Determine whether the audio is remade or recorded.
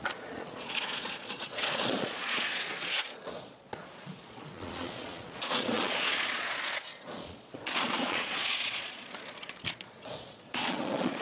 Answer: remade